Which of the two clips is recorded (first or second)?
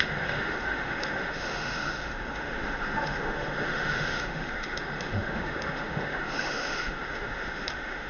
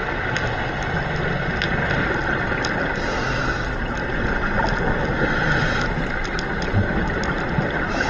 second